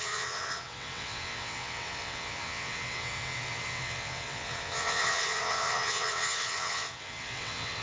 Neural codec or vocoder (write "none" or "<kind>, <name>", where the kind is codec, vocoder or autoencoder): vocoder, WaveNeXt